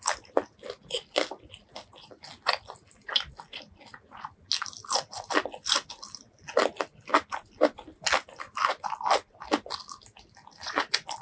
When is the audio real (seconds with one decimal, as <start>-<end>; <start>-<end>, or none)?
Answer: 0.0-11.2